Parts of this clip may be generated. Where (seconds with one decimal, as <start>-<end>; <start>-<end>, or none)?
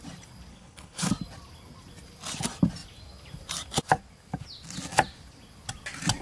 0.5-1.1